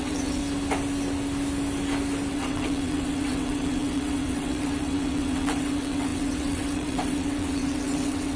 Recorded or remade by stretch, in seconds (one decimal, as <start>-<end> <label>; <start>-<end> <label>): 0.0-0.4 remade; 0.4-2.3 recorded; 2.3-8.4 remade